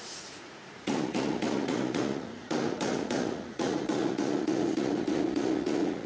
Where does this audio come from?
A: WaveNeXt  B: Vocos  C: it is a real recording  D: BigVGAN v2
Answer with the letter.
B